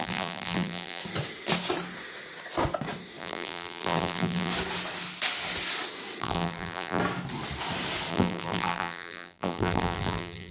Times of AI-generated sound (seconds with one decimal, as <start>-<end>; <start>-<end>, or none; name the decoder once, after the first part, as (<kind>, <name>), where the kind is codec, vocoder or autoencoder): 0.0-1.0 (vocoder, BigVGAN v2); 3.2-4.5; 6.2-7.0; 8.1-10.5